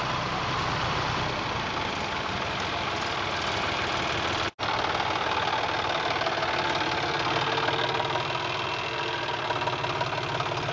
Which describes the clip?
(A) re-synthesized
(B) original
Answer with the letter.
B